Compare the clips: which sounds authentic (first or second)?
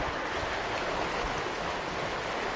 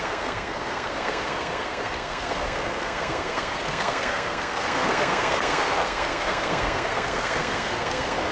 first